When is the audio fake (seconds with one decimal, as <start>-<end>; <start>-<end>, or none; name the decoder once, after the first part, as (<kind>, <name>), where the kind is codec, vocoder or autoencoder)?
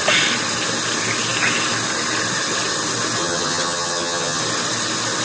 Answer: 3.2-4.4 (vocoder, HiFi-GAN)